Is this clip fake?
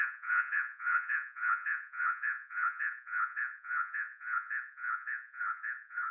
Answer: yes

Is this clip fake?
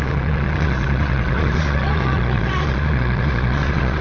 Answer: yes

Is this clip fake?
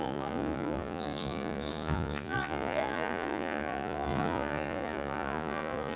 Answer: yes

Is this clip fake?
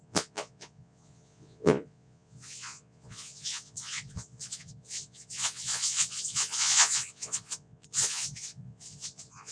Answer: yes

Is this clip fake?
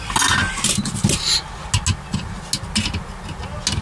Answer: no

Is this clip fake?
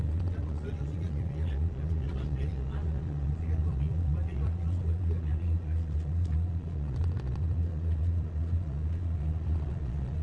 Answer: yes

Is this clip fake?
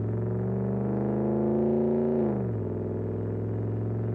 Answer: no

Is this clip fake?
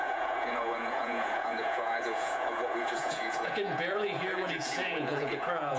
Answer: yes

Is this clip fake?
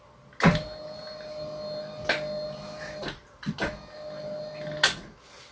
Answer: no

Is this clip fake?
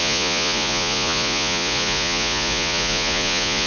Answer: yes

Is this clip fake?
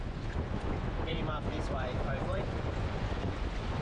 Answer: yes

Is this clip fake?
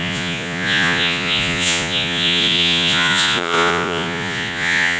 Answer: yes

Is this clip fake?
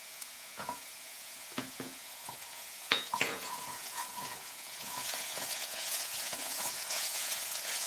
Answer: yes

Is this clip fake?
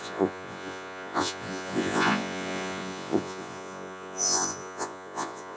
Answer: yes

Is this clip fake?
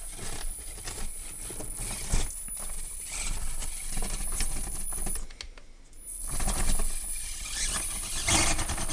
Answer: no